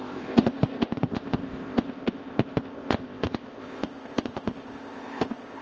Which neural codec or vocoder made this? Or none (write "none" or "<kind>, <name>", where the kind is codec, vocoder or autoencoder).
codec, ZipCodec